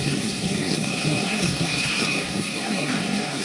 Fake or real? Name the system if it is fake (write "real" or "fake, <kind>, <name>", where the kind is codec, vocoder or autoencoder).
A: fake, codec, SNAC